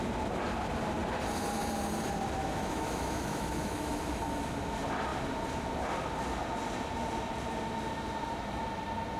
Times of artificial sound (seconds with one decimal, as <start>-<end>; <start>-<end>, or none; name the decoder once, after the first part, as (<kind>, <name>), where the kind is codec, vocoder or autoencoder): 2.4-4.1 (autoencoder, DAC-VAE)